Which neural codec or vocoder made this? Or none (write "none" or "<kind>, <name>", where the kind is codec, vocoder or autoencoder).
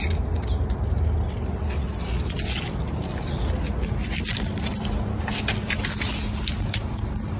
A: none